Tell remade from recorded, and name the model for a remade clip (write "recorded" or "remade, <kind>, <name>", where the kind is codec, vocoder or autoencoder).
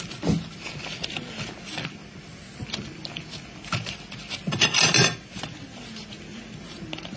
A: recorded